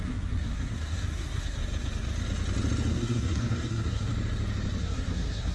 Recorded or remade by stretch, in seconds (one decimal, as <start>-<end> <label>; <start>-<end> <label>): 0.0-1.6 remade; 1.6-2.9 recorded; 2.9-4.1 remade; 4.1-4.8 recorded; 4.8-5.5 remade